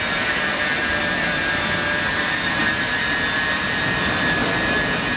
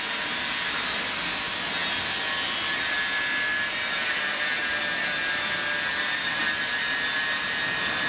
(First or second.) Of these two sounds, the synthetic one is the first